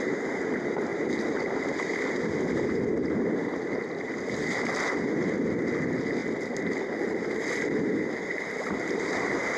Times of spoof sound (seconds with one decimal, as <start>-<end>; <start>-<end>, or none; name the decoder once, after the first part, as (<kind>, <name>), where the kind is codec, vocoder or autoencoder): 0.9-4.6 (vocoder, BigVGAN v2); 6.2-7.3